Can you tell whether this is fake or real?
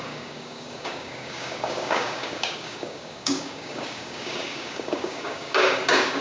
fake